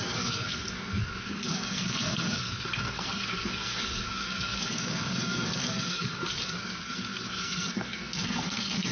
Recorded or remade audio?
remade